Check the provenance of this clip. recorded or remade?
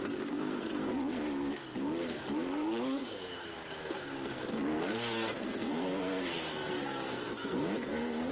remade